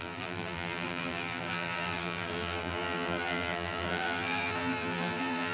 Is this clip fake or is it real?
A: fake